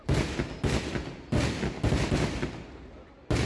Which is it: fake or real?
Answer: real